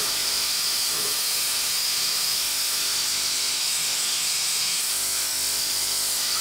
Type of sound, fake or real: fake